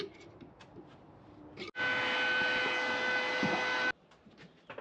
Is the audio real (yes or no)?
yes